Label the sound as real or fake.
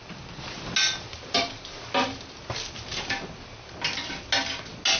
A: real